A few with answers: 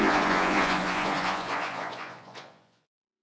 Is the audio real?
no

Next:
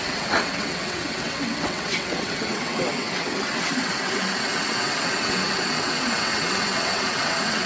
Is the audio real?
no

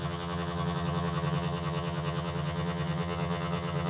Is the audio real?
no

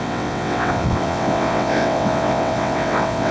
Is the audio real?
no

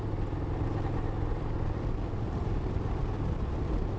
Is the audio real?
yes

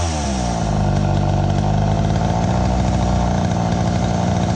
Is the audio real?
yes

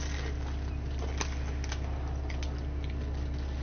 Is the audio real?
yes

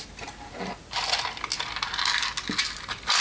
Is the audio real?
yes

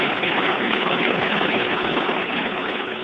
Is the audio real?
no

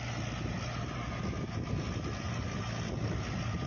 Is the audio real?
yes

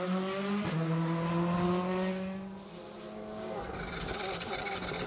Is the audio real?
yes